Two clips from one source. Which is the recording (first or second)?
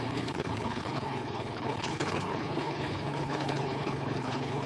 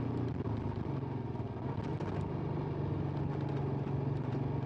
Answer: second